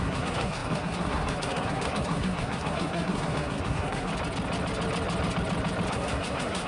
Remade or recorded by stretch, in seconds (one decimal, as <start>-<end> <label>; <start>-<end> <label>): 0.0-4.1 remade; 4.1-5.9 recorded; 5.9-6.7 remade